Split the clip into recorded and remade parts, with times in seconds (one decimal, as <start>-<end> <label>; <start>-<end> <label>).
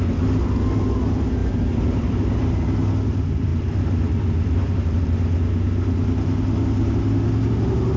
0.0-1.4 recorded; 1.4-2.5 remade; 2.5-3.5 recorded; 3.5-5.4 remade; 5.4-8.0 recorded